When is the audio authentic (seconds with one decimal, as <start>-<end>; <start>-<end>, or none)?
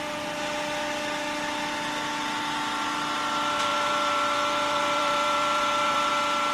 0.0-3.7; 6.1-6.5